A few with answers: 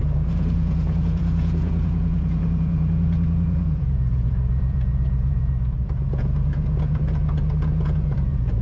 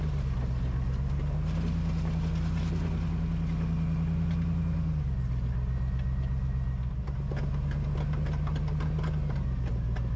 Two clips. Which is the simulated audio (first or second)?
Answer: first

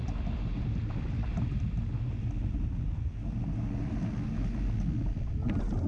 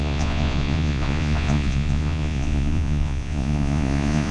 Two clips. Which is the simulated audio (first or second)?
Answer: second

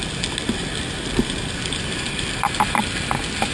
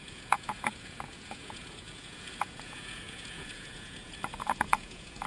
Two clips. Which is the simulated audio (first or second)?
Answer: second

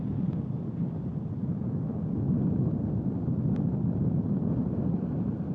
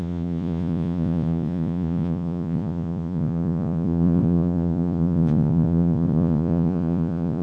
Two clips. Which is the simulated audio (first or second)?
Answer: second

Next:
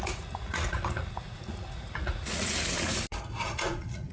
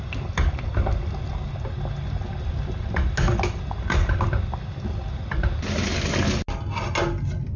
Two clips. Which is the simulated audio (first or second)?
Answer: first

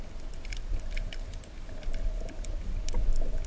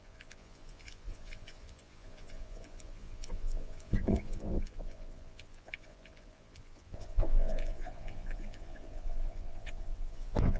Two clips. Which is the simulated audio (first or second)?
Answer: second